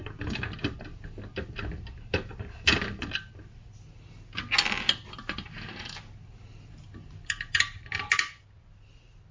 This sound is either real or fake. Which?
real